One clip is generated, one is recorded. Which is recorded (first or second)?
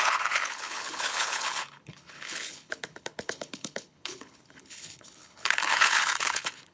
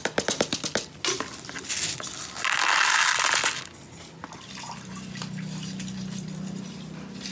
second